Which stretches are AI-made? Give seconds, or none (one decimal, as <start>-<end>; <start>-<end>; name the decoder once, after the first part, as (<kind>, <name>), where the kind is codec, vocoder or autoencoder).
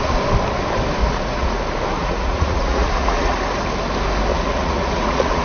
1.0-1.6 (vocoder, Vocos); 2.0-3.4; 4.3-5.4